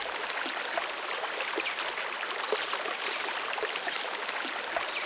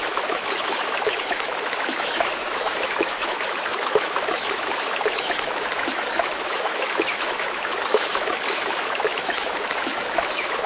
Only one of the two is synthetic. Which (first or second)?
second